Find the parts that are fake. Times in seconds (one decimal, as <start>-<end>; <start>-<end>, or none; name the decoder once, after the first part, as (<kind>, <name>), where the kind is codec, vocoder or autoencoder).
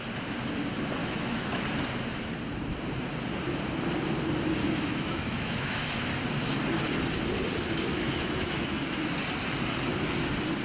1.0-1.6 (autoencoder, DAC-VAE); 4.6-6.1; 7.9-9.2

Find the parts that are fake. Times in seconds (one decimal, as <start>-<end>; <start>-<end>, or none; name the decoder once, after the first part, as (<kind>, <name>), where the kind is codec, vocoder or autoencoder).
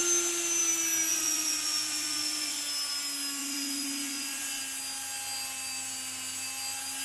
1.1-2.6 (vocoder, Vocos); 3.4-4.6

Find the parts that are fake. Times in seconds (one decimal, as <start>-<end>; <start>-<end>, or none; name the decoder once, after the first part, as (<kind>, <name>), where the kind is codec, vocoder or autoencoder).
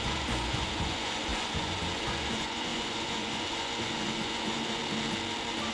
0.0-4.8 (vocoder, Vocos)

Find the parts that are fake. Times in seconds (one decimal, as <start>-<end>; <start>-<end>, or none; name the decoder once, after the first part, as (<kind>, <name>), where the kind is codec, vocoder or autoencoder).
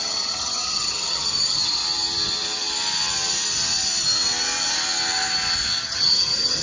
0.0-1.8 (vocoder, HiFi-GAN); 5.8-6.6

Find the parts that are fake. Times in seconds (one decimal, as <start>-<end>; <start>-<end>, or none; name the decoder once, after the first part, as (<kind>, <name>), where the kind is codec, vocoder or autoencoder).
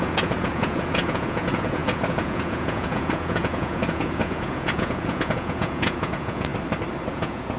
0.0-6.5 (vocoder, Vocos); 7.1-7.6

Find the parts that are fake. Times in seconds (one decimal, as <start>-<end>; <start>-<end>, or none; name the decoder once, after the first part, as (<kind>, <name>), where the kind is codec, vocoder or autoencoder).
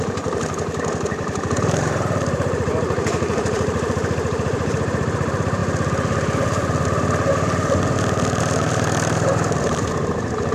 0.0-5.6 (vocoder, BigVGAN v2); 8.4-10.5